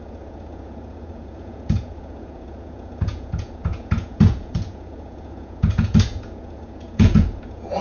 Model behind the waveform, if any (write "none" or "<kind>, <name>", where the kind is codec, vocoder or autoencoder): vocoder, Vocos